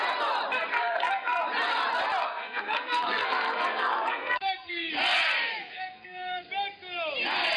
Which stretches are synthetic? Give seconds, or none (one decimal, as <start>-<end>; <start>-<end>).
0.7-1.4; 2.2-4.9; 5.6-6.5